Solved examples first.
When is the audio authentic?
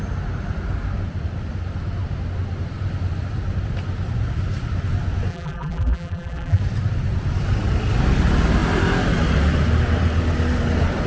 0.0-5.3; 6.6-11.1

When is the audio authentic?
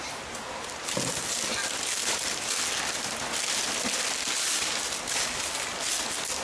0.0-1.6; 5.4-6.4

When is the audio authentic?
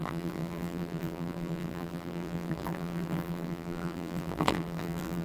none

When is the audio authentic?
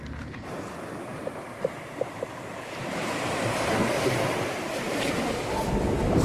0.0-1.1; 3.0-3.8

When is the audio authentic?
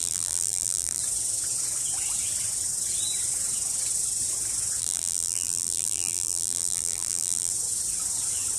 1.0-4.8; 7.5-8.6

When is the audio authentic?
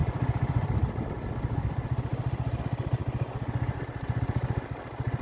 1.1-2.1; 2.6-5.2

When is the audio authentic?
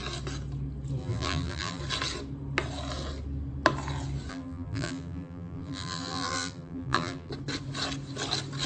0.0-1.0; 1.8-4.3; 7.3-8.7